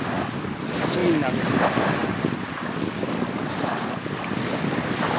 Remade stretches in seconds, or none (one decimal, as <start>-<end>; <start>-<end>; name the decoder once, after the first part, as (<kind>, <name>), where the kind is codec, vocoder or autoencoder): none